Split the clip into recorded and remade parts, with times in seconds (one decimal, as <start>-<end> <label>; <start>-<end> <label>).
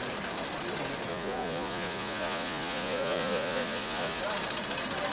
0.0-1.1 recorded; 1.1-4.2 remade; 4.2-5.1 recorded